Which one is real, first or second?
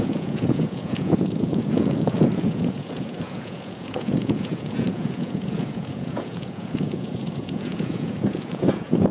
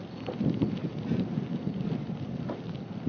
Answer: second